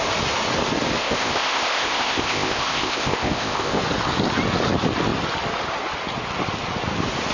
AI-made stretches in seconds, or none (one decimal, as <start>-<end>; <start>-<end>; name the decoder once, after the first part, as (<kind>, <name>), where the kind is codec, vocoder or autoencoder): 1.0-3.8 (codec, ZipCodec)